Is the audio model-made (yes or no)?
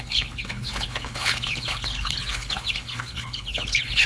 yes